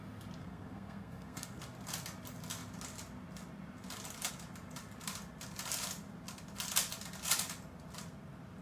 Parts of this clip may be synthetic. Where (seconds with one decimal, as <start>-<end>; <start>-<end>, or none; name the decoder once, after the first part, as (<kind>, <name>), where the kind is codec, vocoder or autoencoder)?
0.4-1.6 (codec, SNAC)

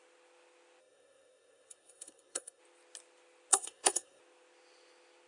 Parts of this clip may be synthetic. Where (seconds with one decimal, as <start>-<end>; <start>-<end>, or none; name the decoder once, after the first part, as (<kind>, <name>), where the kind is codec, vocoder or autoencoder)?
0.8-2.6 (codec, SNAC); 3.5-4.2

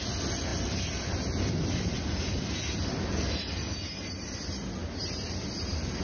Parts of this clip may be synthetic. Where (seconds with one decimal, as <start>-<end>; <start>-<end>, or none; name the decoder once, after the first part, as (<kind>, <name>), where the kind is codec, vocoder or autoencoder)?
none

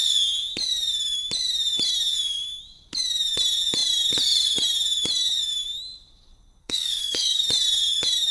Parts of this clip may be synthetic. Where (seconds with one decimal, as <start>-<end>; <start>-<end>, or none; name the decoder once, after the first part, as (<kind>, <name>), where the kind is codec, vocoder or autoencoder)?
6.6-7.4 (codec, SNAC)

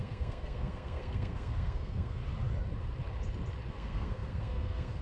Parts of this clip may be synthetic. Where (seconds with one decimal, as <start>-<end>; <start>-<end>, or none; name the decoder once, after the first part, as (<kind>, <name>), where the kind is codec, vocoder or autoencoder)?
0.0-2.2 (codec, SNAC); 3.7-5.0

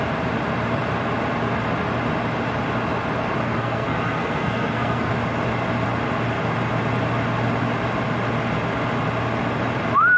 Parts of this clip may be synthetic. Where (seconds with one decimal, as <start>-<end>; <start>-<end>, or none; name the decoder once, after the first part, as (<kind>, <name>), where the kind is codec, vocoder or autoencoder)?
3.4-5.1 (codec, SNAC)

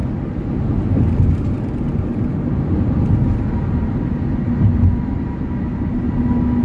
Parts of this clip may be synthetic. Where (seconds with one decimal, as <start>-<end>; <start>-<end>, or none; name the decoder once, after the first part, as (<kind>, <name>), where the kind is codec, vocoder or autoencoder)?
none

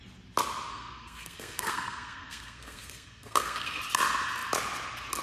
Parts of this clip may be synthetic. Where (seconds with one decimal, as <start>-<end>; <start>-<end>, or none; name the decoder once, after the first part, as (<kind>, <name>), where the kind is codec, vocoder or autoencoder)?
0.7-3.8 (codec, SNAC)